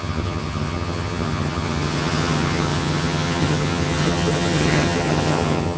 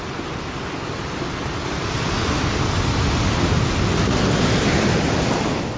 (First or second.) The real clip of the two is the second